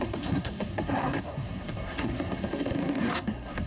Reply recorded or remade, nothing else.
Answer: remade